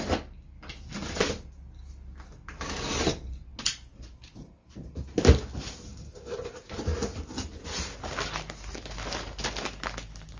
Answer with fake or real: real